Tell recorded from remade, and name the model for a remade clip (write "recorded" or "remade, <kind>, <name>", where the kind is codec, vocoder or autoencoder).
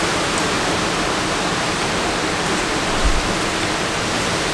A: recorded